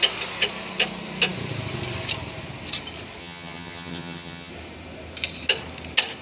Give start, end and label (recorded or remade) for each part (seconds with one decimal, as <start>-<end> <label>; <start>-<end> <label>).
0.0-3.2 recorded; 3.2-4.5 remade; 4.5-6.2 recorded